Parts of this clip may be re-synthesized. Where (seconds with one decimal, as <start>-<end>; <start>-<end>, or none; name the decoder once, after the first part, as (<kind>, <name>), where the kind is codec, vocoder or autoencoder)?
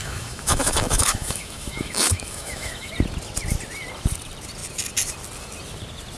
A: 0.0-2.9 (autoencoder, DAC-VAE)